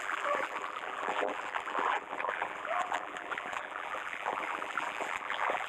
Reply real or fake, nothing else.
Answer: fake